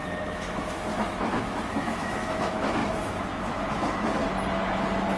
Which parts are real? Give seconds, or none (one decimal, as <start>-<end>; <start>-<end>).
4.2-5.2